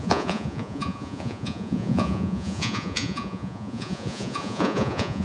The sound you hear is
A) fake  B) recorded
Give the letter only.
A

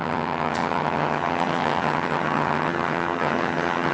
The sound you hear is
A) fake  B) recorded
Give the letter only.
A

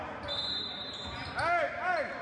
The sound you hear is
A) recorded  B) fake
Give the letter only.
A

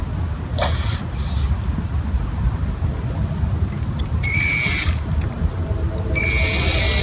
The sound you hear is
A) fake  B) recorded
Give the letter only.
B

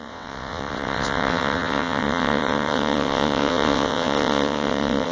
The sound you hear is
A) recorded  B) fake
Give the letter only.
B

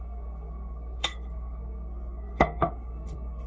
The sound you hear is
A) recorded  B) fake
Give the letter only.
B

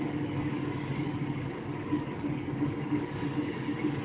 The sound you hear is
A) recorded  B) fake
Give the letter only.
B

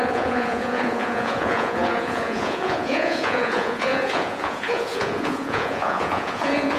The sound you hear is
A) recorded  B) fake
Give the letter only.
B